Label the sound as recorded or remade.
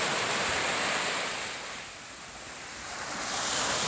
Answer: recorded